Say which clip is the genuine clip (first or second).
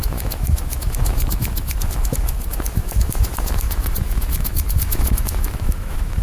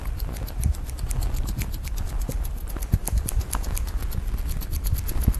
second